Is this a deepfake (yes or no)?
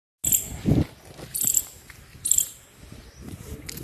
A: no